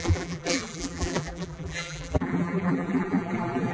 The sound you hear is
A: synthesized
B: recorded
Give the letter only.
A